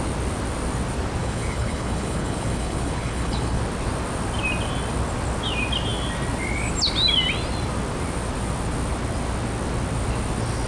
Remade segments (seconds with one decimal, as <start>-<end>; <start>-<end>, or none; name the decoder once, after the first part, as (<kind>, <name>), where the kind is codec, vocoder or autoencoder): 1.2-3.6 (codec, HILCodec)